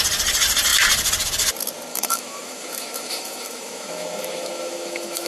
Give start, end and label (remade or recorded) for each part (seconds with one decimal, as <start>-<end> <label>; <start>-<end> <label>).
0.0-1.9 recorded; 1.9-5.3 remade

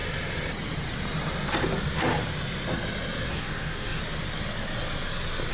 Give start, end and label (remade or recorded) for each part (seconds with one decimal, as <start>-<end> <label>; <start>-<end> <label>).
0.0-3.3 recorded; 3.3-4.0 remade; 4.0-5.5 recorded